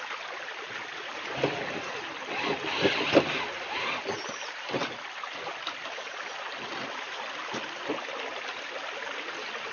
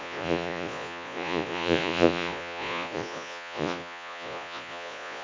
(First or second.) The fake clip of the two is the second